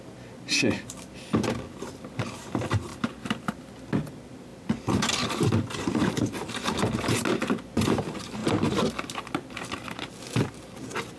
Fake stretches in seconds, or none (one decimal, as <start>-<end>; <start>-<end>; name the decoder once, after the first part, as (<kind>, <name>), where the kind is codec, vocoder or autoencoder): none